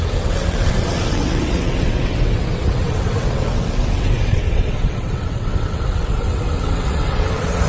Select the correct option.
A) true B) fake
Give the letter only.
B